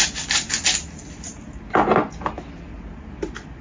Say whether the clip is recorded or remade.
recorded